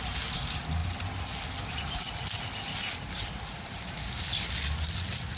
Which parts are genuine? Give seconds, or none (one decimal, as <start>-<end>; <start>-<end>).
0.0-5.4